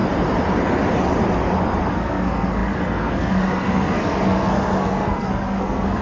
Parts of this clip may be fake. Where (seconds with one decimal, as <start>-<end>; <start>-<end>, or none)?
1.9-6.0